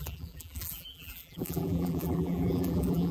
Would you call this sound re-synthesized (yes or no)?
yes